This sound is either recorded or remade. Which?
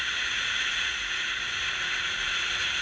remade